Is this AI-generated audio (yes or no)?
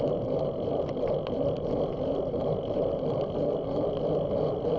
no